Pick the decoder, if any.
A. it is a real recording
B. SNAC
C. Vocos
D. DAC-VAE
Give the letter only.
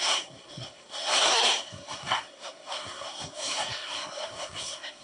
B